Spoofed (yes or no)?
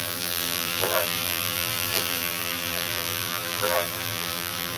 yes